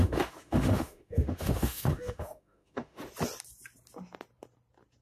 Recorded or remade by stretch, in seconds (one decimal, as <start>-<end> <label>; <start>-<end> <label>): 0.0-3.0 remade; 3.0-5.0 recorded